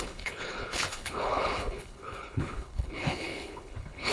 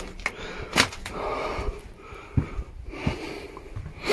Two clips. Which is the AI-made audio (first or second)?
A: first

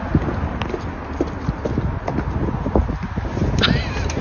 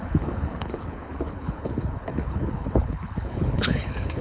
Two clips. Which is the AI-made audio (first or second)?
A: second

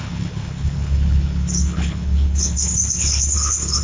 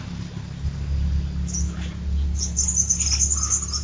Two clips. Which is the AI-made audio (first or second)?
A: first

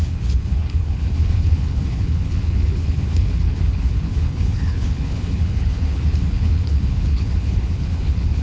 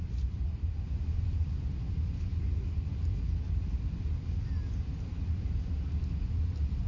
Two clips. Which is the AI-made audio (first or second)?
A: first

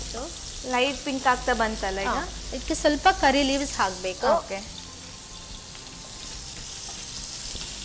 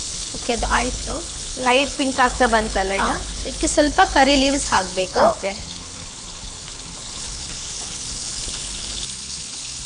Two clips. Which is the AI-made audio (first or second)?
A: second